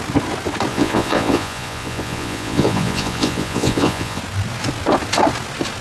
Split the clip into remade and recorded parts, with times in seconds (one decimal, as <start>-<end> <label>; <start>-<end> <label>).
0.0-0.7 recorded; 0.7-4.2 remade; 4.2-5.8 recorded